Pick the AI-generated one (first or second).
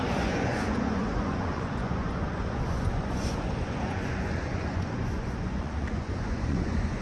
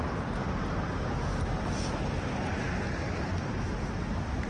first